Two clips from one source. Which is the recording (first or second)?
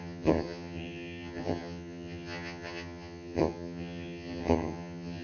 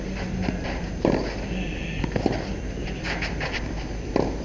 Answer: second